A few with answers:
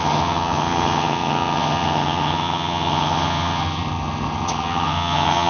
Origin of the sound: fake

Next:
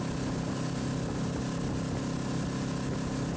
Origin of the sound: real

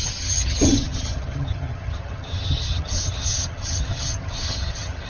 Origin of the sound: fake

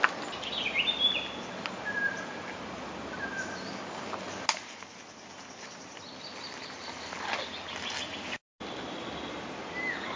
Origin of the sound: real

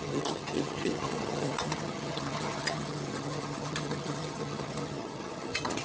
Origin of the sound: fake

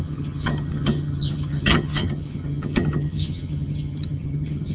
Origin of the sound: fake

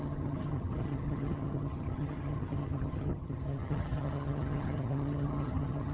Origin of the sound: fake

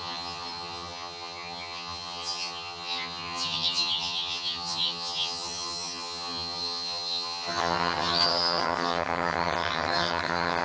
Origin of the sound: fake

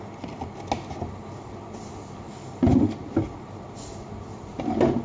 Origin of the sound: real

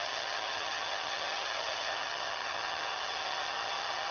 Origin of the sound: fake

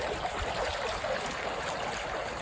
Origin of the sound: real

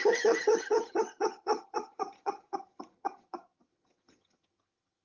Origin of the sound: fake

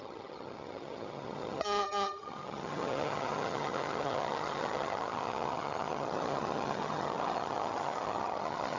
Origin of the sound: fake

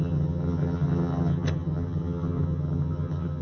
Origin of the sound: fake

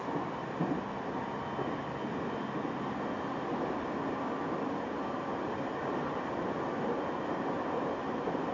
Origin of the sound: real